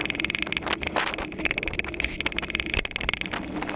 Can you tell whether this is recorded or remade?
recorded